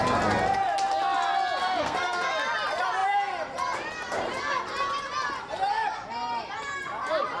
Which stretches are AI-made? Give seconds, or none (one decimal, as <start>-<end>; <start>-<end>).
1.6-2.3